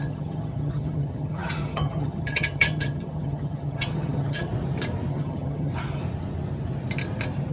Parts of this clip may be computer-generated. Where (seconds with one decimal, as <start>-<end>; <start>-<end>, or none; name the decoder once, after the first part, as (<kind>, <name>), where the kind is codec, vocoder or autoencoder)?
0.0-4.5 (vocoder, HiFi-GAN); 5.1-5.7